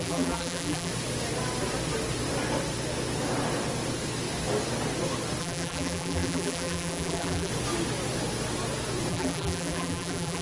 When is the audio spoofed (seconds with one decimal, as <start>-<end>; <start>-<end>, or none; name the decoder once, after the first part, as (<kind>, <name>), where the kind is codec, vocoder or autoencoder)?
0.0-0.9 (vocoder, BigVGAN v2); 5.4-7.5; 9.1-10.4